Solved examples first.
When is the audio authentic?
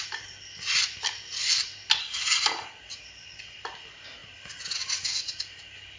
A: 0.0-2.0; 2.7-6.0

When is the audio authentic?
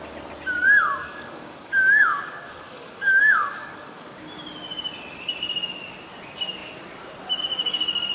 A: 0.0-0.9; 4.2-8.1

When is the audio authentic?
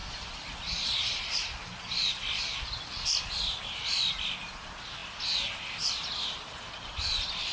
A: 0.0-7.5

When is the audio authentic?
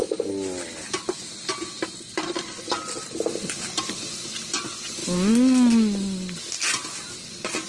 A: 0.0-7.7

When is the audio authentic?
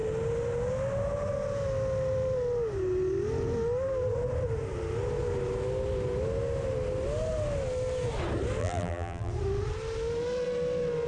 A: 0.0-8.6; 9.3-11.1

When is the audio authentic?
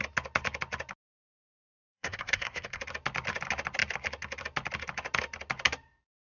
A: 0.0-1.5; 2.8-6.3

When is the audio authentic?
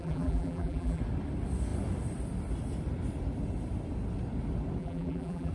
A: 1.0-4.8